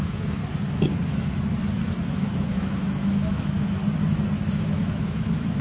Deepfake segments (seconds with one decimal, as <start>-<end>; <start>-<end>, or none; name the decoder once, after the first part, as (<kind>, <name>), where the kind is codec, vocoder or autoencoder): 0.0-0.4 (autoencoder, DAC-VAE); 2.1-3.8; 4.5-5.6